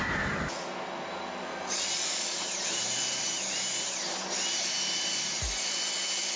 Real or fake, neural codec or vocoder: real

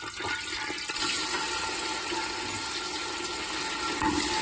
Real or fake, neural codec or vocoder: real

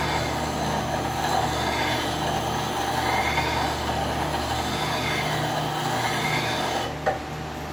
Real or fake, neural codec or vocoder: real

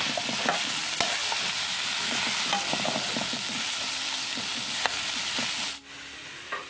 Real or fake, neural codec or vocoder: real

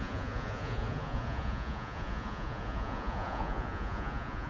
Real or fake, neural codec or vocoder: fake, vocoder, Vocos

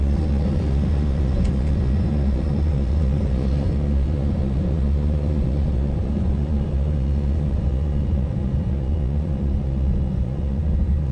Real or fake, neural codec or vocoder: fake, vocoder, Vocos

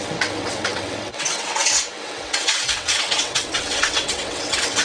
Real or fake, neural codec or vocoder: fake, vocoder, WaveNeXt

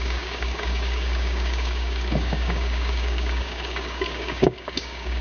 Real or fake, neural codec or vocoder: fake, codec, DAC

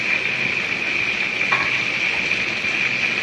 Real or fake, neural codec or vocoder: real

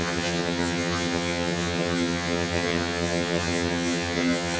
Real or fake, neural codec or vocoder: fake, vocoder, HiFi-GAN